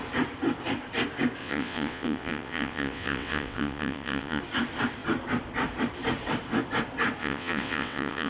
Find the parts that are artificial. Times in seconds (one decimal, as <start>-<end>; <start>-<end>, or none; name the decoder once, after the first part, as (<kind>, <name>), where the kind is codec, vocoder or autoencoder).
1.4-4.4 (vocoder, WaveNeXt); 7.2-8.3